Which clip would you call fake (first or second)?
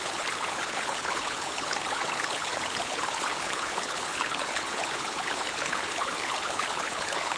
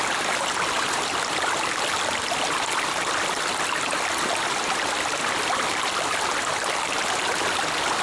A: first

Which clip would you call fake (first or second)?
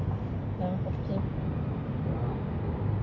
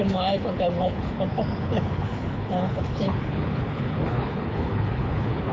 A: second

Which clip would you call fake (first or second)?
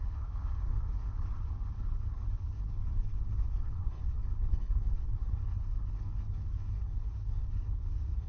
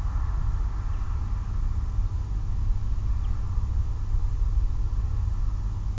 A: first